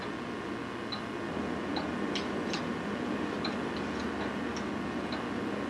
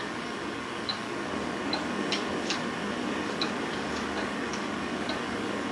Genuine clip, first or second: first